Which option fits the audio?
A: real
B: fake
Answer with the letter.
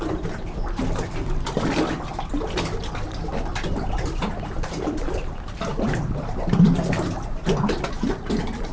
A